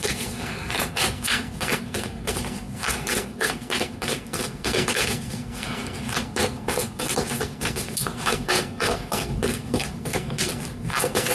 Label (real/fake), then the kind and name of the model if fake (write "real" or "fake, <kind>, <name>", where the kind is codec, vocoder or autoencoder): fake, codec, SNAC